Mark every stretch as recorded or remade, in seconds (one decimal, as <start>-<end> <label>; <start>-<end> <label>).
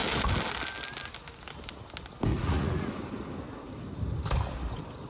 0.0-2.3 recorded; 2.3-3.0 remade; 3.0-5.1 recorded